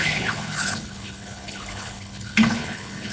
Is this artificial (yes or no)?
yes